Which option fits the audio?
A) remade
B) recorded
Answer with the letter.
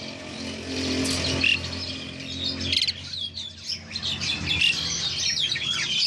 B